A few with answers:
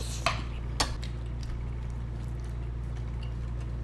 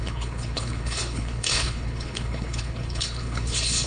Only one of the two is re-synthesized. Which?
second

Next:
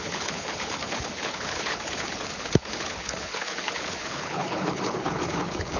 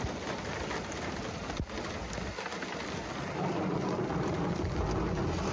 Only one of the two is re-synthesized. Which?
first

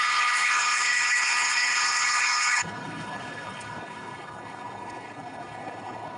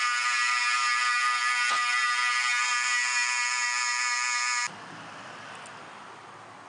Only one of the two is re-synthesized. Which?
first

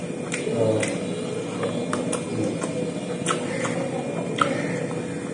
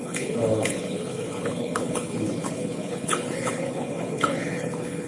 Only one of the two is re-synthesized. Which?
second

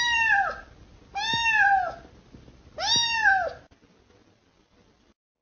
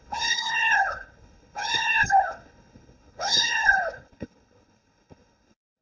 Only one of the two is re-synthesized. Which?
second